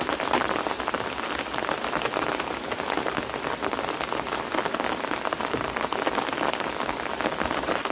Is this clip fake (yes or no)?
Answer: no